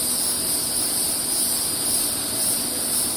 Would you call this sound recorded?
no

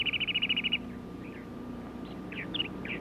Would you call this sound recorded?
no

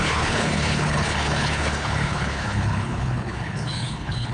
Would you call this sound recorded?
no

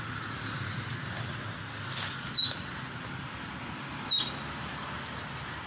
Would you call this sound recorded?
yes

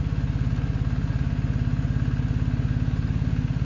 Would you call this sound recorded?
yes